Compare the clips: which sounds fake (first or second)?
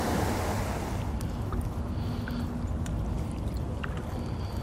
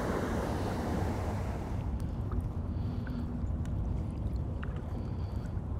second